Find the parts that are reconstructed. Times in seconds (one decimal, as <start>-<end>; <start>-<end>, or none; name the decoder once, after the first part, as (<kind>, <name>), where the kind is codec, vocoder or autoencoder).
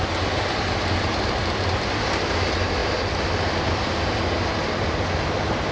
1.4-1.9 (vocoder, BigVGAN v2); 2.8-5.0